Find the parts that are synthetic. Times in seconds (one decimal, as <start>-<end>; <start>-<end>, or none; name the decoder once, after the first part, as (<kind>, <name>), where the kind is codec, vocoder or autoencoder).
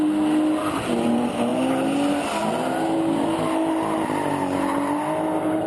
none